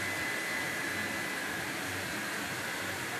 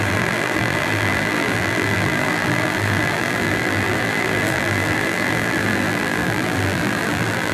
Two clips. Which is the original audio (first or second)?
first